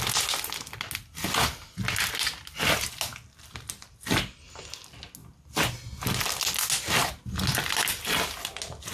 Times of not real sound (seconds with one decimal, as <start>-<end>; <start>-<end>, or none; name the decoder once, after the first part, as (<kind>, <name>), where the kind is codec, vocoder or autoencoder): none